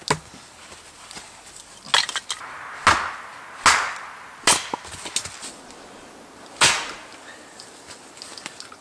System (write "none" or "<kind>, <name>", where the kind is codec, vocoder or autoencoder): none